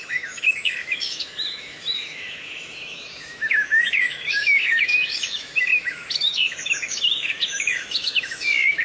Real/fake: fake